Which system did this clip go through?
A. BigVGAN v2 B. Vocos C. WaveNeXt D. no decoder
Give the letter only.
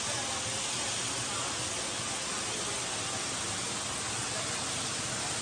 D